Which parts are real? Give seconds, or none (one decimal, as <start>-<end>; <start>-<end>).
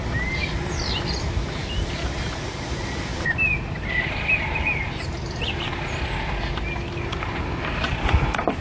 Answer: 0.0-8.6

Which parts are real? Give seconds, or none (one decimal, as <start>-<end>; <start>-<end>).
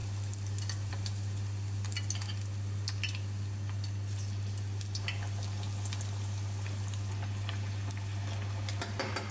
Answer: 0.0-9.3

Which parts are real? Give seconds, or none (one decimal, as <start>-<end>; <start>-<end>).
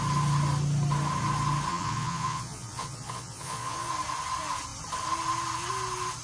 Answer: 0.0-1.7; 3.9-6.2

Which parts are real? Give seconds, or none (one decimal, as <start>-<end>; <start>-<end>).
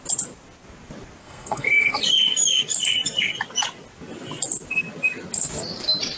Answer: 0.0-1.2; 2.0-6.2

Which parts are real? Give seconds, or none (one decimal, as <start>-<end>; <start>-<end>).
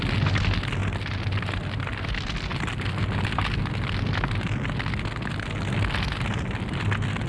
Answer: 0.0-7.3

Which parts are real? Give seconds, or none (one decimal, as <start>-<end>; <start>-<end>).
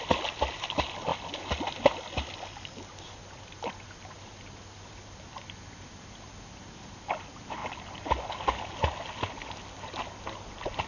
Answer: 0.0-10.9